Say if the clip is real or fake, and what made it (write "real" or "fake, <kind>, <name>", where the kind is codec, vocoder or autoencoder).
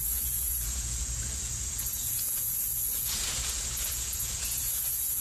fake, vocoder, Vocos